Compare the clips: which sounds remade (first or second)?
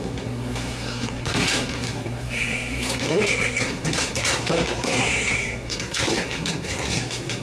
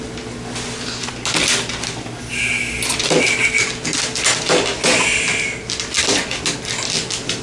first